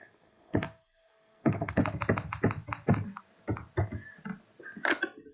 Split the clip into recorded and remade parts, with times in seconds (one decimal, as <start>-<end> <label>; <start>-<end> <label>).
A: 0.0-1.8 remade; 1.8-5.3 recorded